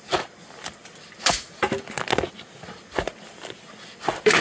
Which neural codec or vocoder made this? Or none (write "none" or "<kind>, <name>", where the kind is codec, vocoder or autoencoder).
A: none